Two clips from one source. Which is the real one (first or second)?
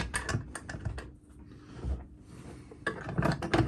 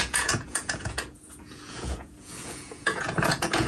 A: first